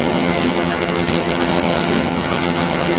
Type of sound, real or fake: fake